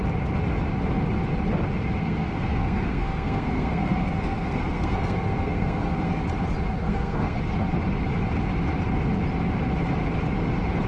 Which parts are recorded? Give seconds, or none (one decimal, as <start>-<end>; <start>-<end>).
0.0-2.0; 6.2-6.8; 7.4-10.9